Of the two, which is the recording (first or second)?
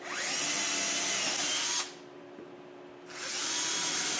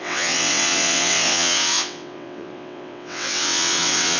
first